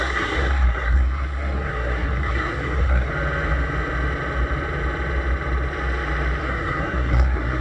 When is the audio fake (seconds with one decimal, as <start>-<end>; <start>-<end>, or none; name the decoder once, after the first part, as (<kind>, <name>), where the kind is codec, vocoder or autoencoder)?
0.0-3.1 (codec, SNAC); 6.4-7.6